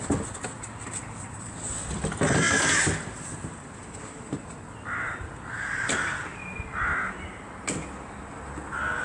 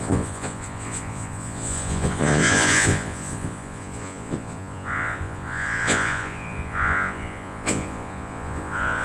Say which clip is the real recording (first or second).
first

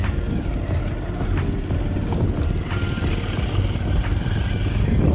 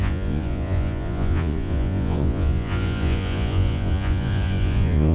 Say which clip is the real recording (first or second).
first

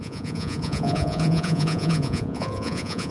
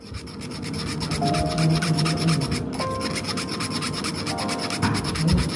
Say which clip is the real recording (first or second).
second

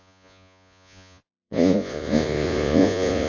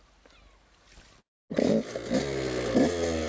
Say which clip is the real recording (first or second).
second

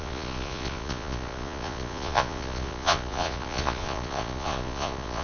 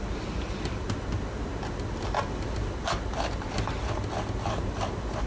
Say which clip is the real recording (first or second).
second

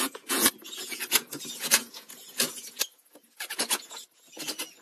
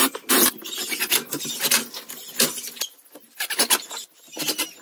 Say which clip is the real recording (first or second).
second